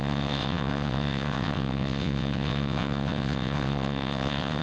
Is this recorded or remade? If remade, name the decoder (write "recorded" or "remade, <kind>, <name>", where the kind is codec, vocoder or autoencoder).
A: remade, vocoder, WaveNeXt